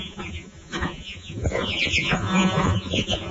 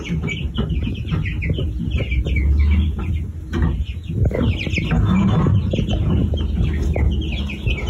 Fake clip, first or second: first